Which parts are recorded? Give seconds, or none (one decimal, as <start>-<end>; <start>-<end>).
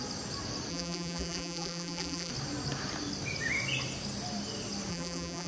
0.0-0.7; 2.3-4.9